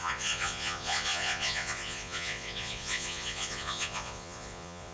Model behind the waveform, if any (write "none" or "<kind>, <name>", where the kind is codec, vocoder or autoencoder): vocoder, Vocos